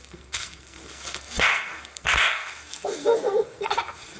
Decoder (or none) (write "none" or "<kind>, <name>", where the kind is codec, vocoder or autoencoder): codec, SNAC